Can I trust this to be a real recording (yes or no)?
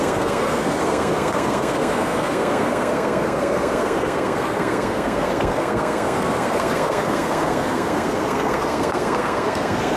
no